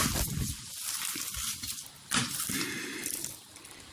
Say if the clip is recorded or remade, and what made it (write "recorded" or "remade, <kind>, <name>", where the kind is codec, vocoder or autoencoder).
remade, vocoder, BigVGAN v2